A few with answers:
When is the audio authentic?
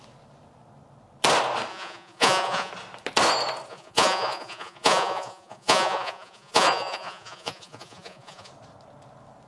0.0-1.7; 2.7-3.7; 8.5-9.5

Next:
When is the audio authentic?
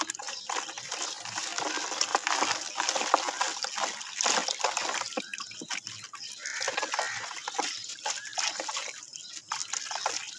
0.0-2.1; 2.7-10.4